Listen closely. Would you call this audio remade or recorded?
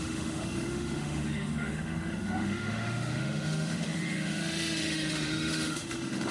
remade